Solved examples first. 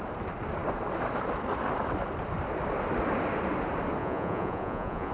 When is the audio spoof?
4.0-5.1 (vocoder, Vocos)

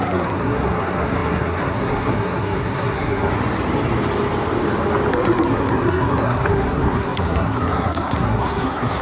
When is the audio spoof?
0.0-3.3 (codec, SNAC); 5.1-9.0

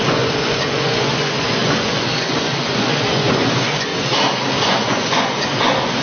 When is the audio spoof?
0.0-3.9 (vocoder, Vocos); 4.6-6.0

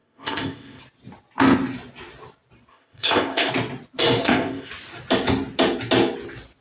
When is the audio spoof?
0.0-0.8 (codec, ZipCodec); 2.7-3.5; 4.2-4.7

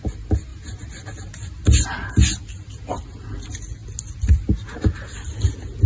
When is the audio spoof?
none

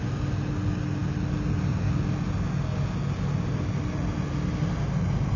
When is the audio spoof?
none

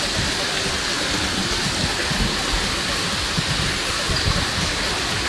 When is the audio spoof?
none